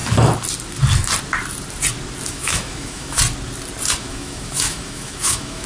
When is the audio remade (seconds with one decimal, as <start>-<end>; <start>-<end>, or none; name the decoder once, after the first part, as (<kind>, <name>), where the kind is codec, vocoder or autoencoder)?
2.3-3.2 (autoencoder, DAC-VAE); 4.0-5.7